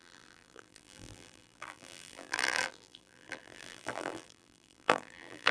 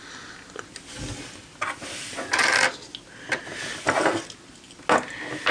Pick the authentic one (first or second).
second